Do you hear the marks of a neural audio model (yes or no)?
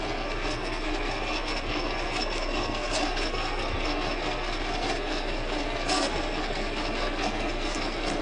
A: yes